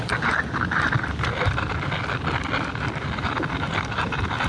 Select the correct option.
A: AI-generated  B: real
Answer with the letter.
B